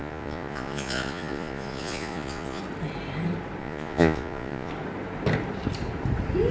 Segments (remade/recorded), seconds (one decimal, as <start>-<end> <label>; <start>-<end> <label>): 0.0-2.6 remade; 2.6-3.6 recorded; 3.6-4.7 remade; 4.7-6.5 recorded